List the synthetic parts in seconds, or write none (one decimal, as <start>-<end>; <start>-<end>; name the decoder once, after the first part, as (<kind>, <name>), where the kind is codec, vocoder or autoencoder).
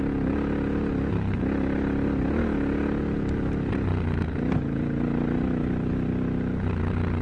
none